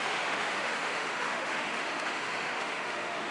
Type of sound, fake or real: fake